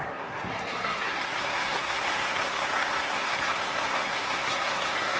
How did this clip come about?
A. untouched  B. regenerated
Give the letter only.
B